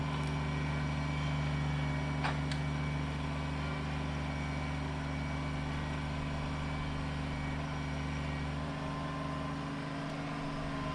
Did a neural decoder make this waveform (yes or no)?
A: no